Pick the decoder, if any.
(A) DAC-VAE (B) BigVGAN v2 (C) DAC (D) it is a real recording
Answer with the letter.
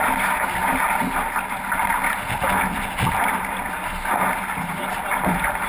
D